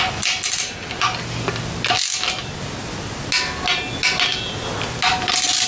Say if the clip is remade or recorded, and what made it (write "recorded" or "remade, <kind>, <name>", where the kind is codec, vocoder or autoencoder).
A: recorded